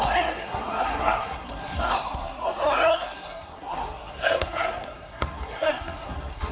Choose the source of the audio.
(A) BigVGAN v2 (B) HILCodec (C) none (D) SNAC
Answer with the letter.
D